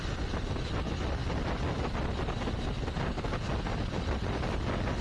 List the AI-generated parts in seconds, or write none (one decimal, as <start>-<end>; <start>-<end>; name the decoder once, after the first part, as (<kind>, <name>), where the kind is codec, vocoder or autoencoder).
none